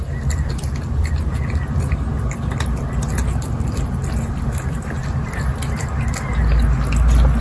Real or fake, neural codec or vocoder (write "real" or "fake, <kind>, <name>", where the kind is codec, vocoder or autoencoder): real